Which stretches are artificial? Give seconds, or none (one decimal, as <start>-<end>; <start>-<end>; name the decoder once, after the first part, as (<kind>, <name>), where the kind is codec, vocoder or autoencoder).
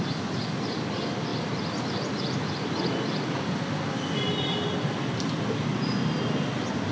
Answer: none